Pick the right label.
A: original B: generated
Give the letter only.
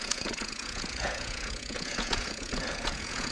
B